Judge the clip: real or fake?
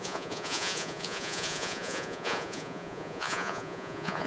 fake